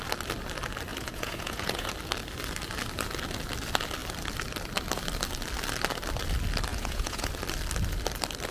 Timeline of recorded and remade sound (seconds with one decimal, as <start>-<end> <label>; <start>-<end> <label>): 0.0-0.9 recorded; 0.9-1.9 remade; 1.9-6.7 recorded; 6.7-7.3 remade; 7.3-8.5 recorded